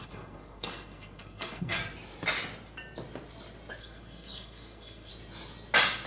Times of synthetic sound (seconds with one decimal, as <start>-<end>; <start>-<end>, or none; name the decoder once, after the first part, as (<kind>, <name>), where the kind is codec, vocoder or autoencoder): 0.0-1.8 (codec, SNAC); 3.8-5.1